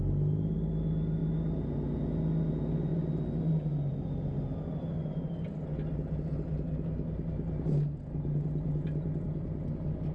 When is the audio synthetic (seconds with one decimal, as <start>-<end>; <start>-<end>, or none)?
none